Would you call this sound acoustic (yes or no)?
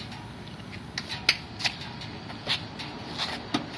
yes